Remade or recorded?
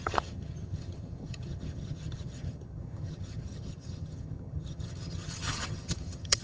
remade